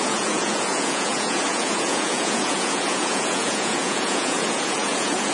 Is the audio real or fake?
fake